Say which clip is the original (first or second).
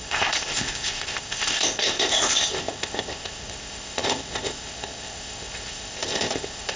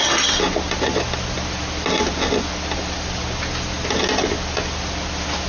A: second